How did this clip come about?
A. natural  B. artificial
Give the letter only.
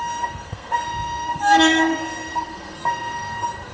B